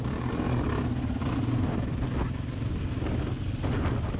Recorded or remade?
recorded